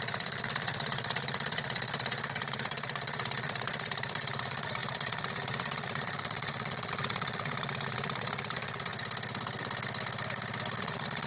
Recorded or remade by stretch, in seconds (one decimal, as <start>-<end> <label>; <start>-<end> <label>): 0.0-8.9 remade; 8.9-10.8 recorded; 10.8-11.3 remade